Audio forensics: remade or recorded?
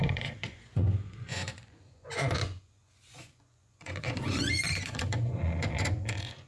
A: remade